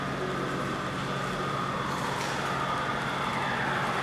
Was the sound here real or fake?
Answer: real